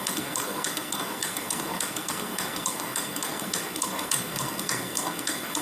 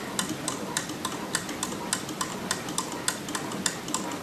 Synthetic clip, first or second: first